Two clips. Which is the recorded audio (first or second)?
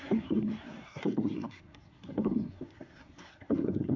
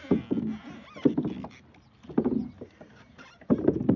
second